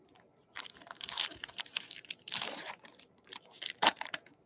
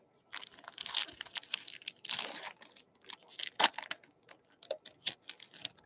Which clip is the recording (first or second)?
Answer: second